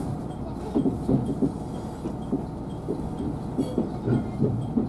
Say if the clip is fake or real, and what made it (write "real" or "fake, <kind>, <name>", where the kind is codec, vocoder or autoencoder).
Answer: real